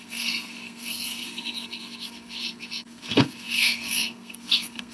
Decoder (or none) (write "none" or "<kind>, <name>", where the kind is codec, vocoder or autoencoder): codec, SNAC